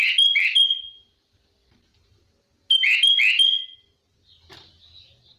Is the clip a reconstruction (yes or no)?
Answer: no